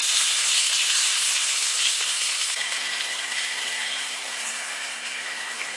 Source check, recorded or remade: remade